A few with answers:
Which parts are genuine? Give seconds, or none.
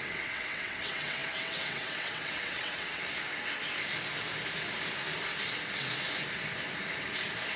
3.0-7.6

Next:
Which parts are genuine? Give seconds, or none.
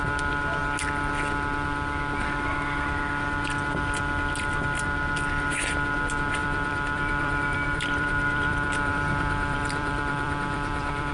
0.0-6.4